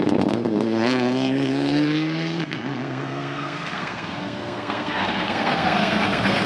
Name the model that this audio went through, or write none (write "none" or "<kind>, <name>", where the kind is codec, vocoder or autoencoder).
codec, SNAC